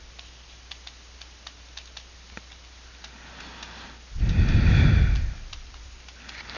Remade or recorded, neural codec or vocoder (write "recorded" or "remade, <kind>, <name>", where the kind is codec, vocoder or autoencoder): recorded